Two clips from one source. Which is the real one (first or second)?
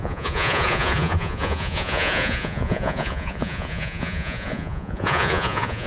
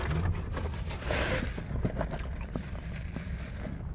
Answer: second